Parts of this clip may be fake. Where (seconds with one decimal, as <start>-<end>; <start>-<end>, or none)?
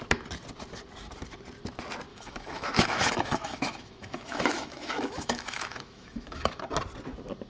2.1-6.6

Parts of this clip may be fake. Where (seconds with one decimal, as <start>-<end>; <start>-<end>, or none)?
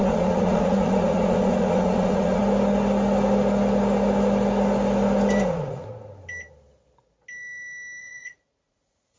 0.0-2.4; 5.5-5.9; 8.0-9.2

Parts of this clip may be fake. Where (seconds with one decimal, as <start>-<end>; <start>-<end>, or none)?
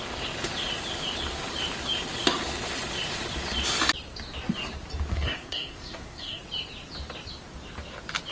5.1-6.4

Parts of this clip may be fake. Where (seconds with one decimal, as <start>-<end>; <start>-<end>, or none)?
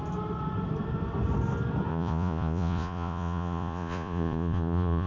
1.9-5.1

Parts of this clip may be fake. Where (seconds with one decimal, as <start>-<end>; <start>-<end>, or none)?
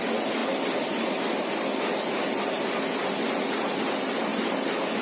none